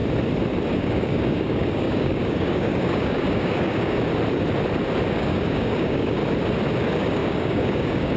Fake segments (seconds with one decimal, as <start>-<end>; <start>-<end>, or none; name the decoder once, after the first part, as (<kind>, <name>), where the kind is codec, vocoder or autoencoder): 0.7-4.1 (codec, DAC); 5.1-6.2; 6.7-8.2